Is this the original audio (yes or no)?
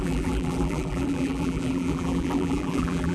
no